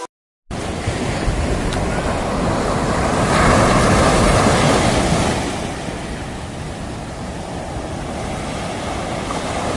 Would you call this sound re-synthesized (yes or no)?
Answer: no